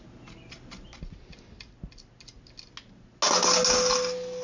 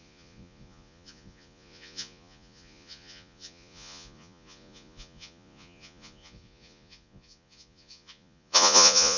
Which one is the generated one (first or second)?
second